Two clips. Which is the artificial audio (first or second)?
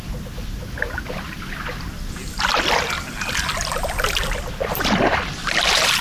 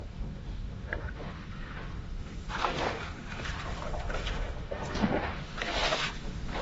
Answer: second